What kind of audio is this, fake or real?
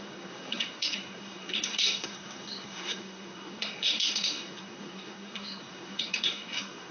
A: fake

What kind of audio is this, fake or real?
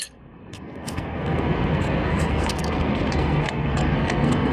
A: fake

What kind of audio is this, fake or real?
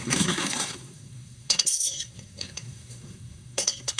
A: fake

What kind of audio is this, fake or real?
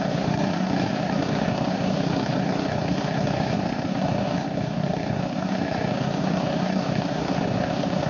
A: fake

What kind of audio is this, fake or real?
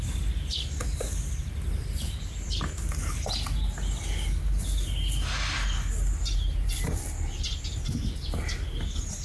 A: real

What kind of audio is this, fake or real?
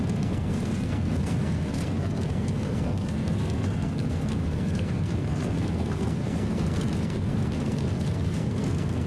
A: fake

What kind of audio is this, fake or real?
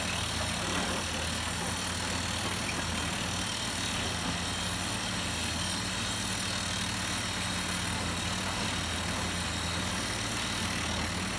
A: real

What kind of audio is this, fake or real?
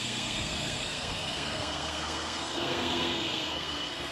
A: fake